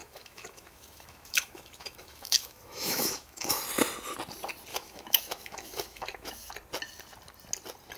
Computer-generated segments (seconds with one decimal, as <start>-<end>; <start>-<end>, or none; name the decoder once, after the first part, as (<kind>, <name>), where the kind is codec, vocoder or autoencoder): 0.0-3.6 (autoencoder, DAC-VAE); 4.7-6.5